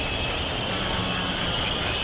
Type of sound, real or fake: real